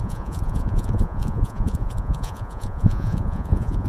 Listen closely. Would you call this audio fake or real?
fake